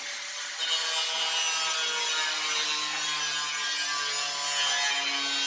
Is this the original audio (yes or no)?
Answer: yes